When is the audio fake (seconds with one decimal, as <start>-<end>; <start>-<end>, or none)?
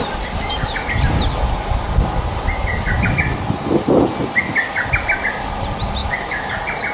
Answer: 6.0-6.5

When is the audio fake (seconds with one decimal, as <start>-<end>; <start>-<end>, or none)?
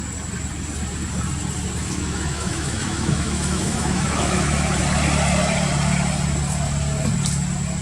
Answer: 1.8-4.8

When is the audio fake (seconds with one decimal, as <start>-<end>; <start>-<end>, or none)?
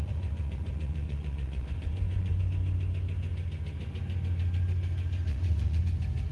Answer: 0.0-2.4; 5.3-5.8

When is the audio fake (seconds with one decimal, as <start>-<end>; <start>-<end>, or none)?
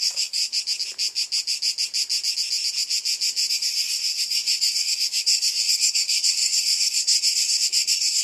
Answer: 0.0-0.4; 3.5-8.2